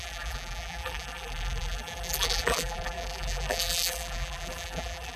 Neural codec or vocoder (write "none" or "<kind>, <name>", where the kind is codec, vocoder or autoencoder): vocoder, BigVGAN v2